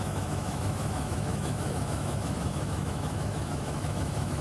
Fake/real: fake